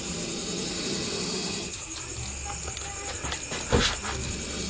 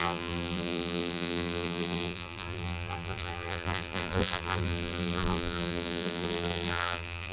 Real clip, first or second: first